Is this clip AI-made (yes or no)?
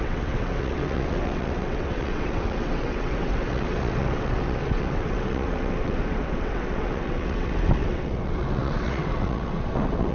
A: yes